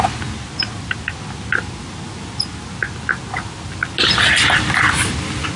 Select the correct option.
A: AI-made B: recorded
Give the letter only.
B